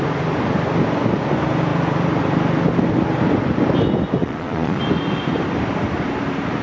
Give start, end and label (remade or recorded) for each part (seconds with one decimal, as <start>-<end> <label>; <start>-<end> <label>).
0.0-4.2 recorded; 4.2-4.8 remade; 4.8-6.6 recorded